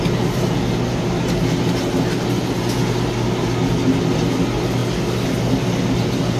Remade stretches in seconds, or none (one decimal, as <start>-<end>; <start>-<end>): none